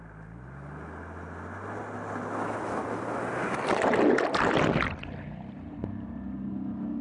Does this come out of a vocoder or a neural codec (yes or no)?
no